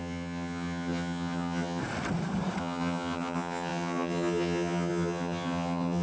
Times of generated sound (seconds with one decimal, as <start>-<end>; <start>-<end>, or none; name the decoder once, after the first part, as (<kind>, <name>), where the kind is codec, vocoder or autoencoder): 0.0-1.8 (vocoder, HiFi-GAN); 2.6-6.0